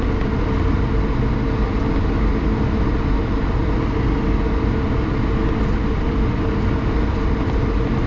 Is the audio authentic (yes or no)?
yes